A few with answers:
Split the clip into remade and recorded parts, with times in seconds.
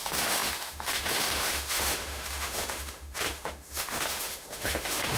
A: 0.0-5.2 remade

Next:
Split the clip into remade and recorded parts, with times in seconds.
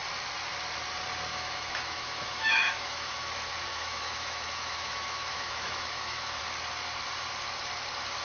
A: 0.0-1.3 recorded; 1.3-3.3 remade; 3.3-3.7 recorded; 3.7-6.4 remade; 6.4-8.2 recorded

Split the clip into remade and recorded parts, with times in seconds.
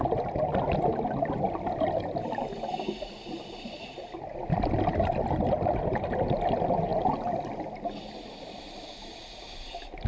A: 0.0-10.1 recorded